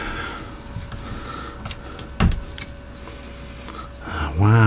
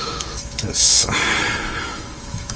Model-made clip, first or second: second